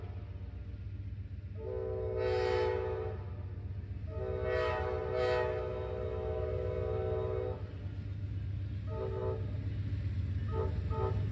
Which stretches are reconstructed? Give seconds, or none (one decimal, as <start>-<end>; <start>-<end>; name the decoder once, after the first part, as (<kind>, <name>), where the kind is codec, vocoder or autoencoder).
none